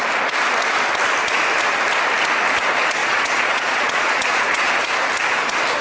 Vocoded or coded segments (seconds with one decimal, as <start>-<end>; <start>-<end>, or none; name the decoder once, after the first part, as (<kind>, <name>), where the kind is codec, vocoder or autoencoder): 3.0-4.8 (vocoder, Vocos)